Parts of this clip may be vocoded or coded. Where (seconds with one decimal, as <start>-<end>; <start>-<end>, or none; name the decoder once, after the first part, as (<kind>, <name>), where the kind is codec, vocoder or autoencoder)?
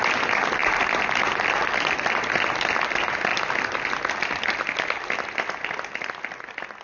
none